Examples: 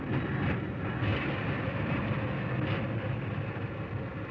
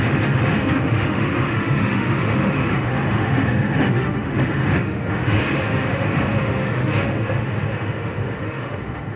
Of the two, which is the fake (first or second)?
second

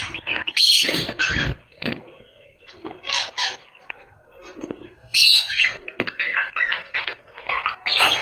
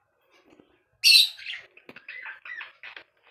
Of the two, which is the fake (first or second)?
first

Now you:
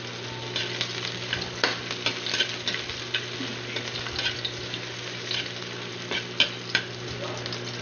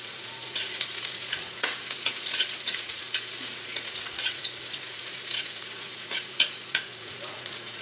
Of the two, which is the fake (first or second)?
second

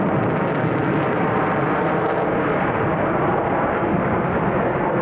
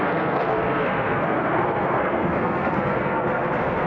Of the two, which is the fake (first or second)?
second